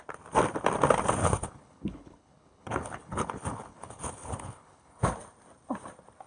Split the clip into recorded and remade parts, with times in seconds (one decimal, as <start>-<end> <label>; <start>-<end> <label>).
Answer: 0.0-1.2 recorded; 1.2-5.0 remade; 5.0-6.3 recorded